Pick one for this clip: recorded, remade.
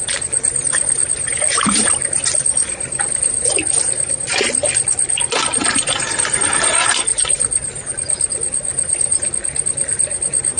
recorded